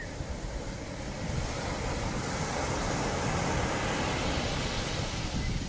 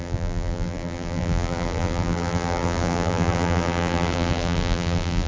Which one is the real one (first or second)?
first